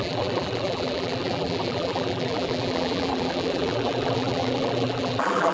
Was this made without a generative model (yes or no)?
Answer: no